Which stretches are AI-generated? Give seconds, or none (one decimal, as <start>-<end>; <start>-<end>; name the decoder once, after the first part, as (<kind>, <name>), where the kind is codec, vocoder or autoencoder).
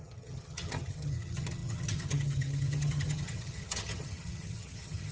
0.0-5.1 (vocoder, HiFi-GAN)